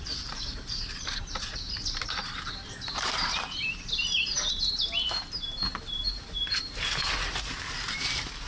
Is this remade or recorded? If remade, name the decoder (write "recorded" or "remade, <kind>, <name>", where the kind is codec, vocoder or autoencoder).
remade, vocoder, BigVGAN v2